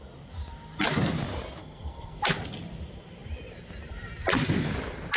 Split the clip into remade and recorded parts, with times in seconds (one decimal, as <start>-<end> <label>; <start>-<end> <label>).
0.0-1.6 recorded; 1.6-2.2 remade; 2.2-5.2 recorded